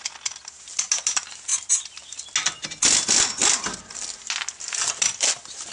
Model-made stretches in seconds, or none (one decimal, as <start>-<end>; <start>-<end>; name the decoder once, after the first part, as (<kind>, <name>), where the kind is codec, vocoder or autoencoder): none